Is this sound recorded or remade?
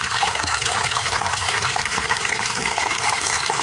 remade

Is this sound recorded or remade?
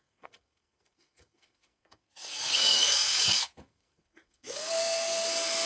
remade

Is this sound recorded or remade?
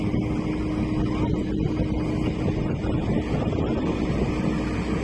recorded